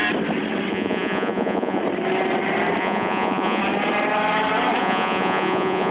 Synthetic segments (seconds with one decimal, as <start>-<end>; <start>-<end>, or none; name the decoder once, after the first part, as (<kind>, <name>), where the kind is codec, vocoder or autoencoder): 0.7-1.8 (vocoder, Vocos); 2.8-3.6; 4.8-5.9